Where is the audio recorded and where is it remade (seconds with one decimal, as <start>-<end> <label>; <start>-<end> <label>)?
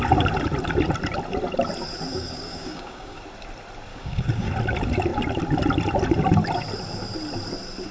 0.0-2.1 recorded; 2.1-3.2 remade; 3.2-3.9 recorded; 3.9-4.5 remade; 4.5-7.9 recorded